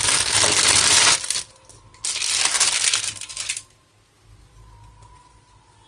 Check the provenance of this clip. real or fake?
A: real